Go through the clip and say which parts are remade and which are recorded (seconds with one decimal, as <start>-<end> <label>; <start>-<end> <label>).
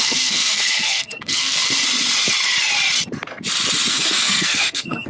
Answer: 0.0-1.6 remade; 1.6-3.9 recorded; 3.9-5.1 remade